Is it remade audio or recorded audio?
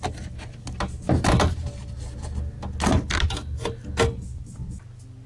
recorded